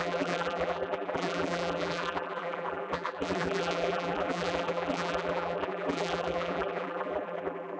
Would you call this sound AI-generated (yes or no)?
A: yes